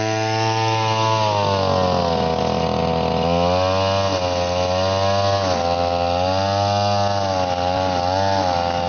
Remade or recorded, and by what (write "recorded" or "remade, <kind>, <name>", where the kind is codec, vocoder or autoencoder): recorded